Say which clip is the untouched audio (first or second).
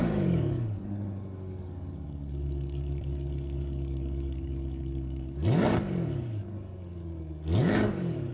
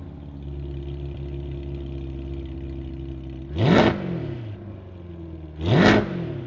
second